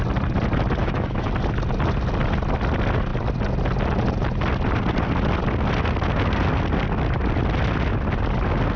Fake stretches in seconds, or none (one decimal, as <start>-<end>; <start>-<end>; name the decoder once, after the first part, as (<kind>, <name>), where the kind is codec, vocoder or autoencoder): 0.8-1.3 (autoencoder, DAC-VAE)